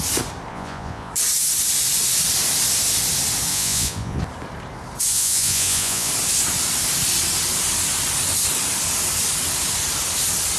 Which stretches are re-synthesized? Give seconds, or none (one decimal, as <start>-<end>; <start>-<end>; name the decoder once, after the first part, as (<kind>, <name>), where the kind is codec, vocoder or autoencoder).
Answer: 0.5-1.1 (vocoder, Vocos); 3.5-4.2; 5.1-6.1